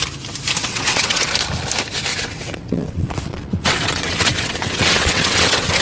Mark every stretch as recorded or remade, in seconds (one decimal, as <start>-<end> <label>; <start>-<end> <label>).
0.0-0.6 recorded; 0.6-1.3 remade; 1.3-2.1 recorded; 2.1-5.8 remade